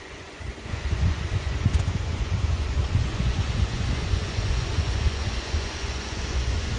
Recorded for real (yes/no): no